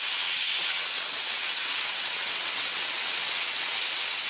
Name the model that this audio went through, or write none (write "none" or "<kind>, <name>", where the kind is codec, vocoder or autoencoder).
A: vocoder, WaveNeXt